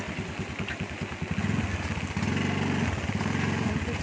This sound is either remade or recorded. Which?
recorded